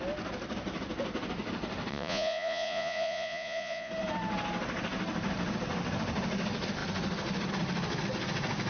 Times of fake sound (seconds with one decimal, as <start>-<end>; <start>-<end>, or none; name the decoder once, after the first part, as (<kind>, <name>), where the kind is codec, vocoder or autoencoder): 1.9-3.9 (vocoder, Vocos)